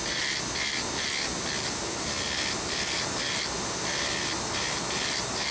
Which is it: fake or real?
real